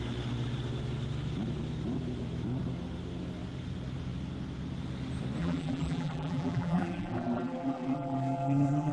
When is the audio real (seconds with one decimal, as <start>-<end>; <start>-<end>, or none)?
0.0-5.4